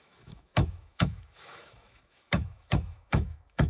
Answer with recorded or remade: remade